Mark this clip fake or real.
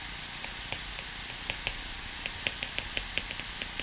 real